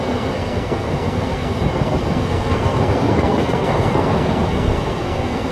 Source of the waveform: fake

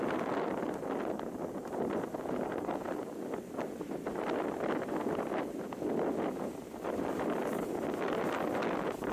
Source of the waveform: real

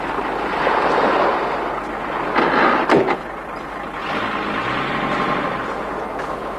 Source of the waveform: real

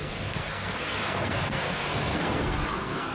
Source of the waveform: fake